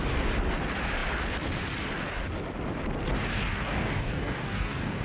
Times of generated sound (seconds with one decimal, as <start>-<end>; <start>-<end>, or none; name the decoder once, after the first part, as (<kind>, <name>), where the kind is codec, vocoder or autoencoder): 3.3-5.0 (codec, DAC)